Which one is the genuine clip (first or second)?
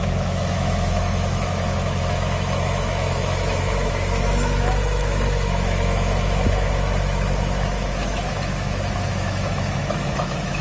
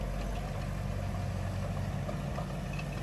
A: second